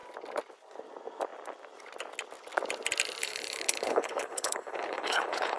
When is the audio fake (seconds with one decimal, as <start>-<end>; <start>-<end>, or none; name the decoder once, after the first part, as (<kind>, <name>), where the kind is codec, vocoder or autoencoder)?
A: 3.2-5.6 (codec, HILCodec)